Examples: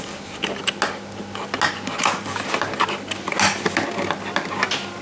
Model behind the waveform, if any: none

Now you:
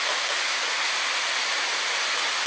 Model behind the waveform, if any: none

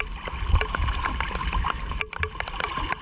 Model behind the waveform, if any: none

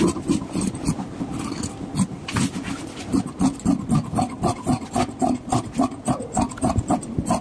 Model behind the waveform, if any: none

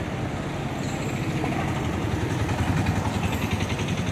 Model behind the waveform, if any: none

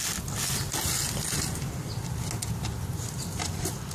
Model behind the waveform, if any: none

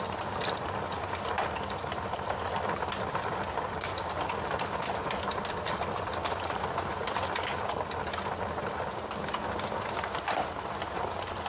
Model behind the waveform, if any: none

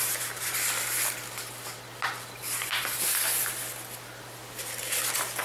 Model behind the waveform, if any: none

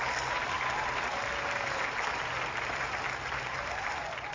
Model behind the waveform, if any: vocoder, BigVGAN v2